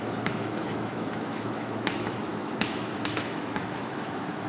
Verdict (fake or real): fake